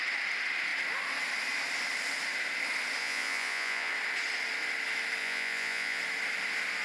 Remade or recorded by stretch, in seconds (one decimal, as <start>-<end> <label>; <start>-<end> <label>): 0.0-3.0 recorded; 3.0-3.9 remade; 3.9-5.2 recorded; 5.2-6.0 remade; 6.0-6.8 recorded